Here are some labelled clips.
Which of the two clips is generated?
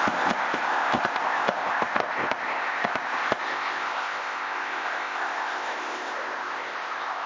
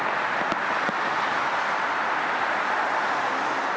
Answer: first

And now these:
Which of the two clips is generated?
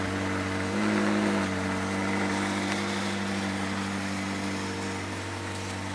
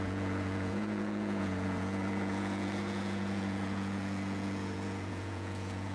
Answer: second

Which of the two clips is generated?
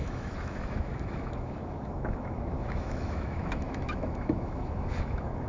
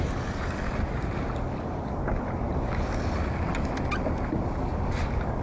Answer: first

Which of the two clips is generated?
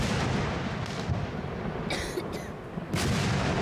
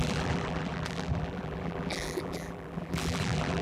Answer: second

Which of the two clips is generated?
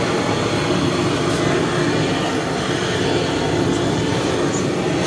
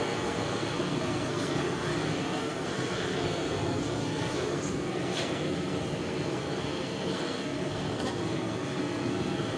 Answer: second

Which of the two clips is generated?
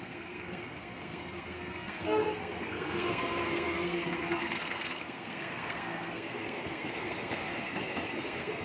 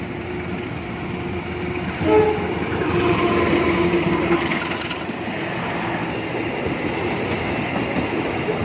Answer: first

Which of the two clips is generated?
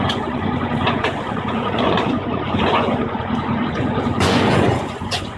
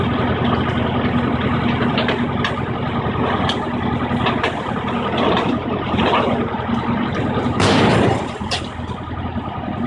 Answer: first